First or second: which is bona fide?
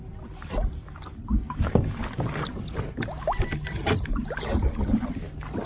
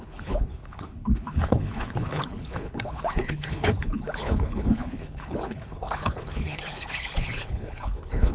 first